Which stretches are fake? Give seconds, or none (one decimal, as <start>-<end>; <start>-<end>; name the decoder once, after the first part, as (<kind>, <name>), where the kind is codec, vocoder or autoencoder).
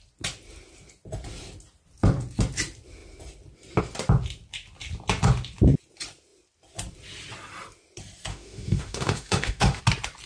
8.3-9.8 (autoencoder, DAC-VAE)